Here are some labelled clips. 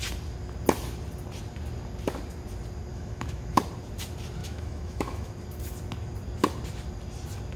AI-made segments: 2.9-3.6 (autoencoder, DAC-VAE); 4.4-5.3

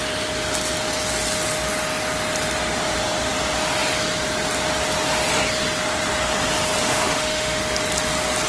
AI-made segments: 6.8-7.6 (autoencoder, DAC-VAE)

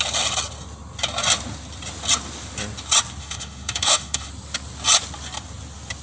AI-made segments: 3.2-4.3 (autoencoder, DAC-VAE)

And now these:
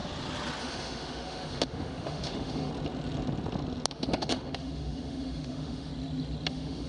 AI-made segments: 0.6-2.7 (autoencoder, DAC-VAE); 3.9-5.9; 6.5-6.9

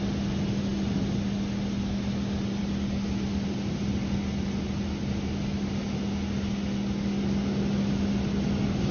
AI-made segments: none